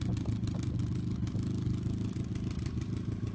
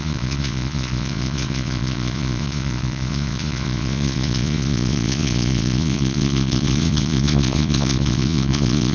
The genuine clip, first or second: first